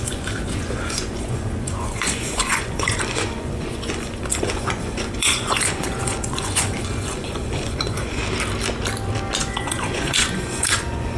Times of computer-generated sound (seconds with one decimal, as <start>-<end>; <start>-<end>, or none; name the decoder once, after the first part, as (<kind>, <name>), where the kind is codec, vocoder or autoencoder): 0.0-8.2 (vocoder, Vocos); 9.4-11.2

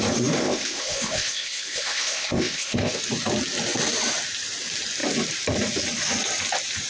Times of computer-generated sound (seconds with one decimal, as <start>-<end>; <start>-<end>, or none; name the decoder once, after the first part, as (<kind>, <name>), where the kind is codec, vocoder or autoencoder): 0.4-3.0 (codec, ZipCodec)